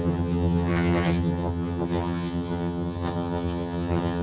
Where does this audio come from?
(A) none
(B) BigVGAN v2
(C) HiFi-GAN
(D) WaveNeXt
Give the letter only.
C